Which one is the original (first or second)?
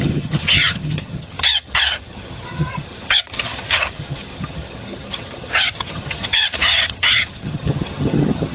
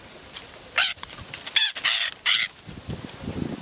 second